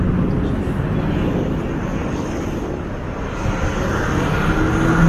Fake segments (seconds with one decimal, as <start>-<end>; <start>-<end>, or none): none